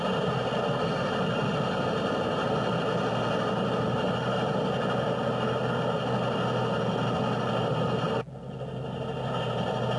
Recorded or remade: recorded